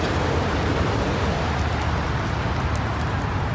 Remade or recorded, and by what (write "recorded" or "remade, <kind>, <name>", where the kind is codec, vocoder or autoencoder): recorded